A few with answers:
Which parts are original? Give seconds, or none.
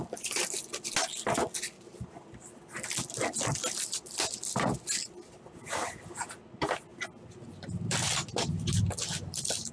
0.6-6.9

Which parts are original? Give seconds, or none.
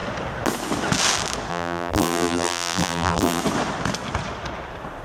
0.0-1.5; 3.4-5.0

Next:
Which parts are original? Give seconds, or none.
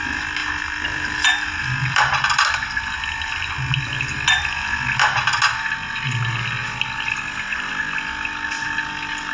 0.0-0.4; 3.5-6.6; 7.7-9.3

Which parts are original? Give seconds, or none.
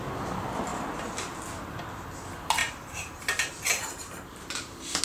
0.0-0.7; 1.8-2.6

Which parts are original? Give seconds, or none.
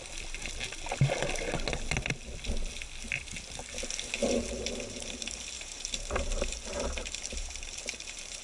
0.0-4.2